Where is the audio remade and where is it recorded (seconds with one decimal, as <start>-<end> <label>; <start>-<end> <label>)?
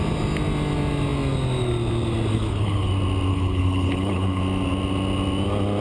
0.0-2.3 recorded; 2.3-2.9 remade; 2.9-3.3 recorded; 3.3-4.4 remade; 4.4-5.8 recorded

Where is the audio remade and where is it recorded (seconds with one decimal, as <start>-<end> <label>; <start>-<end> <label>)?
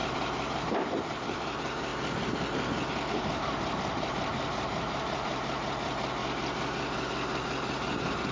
0.0-1.9 remade; 1.9-3.2 recorded; 3.2-6.2 remade; 6.2-7.4 recorded; 7.4-8.3 remade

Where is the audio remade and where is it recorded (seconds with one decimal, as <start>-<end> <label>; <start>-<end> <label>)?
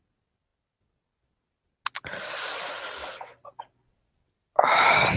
0.0-5.2 recorded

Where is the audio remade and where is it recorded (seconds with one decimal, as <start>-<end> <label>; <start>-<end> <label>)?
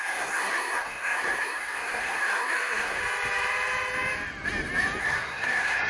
0.0-3.0 remade; 3.0-5.0 recorded; 5.0-5.9 remade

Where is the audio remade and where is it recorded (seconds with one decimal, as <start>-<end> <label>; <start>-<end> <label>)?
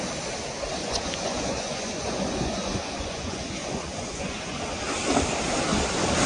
0.0-0.8 recorded; 0.8-4.6 remade; 4.6-6.3 recorded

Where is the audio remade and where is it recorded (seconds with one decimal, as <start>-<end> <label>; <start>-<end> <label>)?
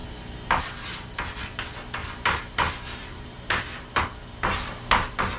0.0-2.0 recorded; 2.0-4.0 remade; 4.0-5.4 recorded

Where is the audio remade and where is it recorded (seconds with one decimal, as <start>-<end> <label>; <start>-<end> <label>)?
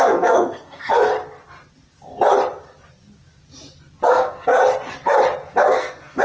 0.0-1.1 remade; 1.1-4.1 recorded; 4.1-4.5 remade; 4.5-5.5 recorded; 5.5-6.2 remade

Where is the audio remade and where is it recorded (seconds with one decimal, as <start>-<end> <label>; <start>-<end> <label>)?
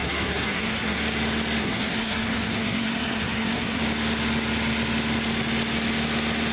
0.0-1.0 remade; 1.0-1.6 recorded; 1.6-3.8 remade; 3.8-6.5 recorded